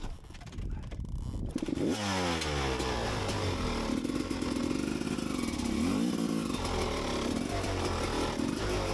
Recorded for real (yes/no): yes